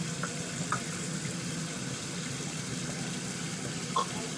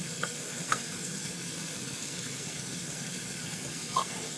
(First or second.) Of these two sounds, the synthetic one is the second